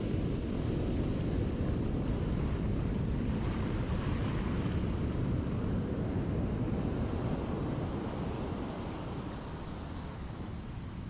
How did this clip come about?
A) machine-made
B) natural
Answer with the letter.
B